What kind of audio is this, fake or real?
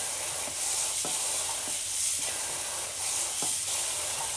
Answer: real